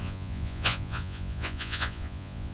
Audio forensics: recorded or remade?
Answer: remade